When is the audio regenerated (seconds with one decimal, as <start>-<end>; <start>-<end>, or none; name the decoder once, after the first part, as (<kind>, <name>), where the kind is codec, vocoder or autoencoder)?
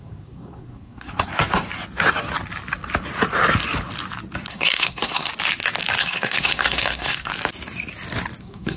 0.0-1.3 (codec, SNAC); 4.5-5.3; 6.0-7.3; 8.4-8.8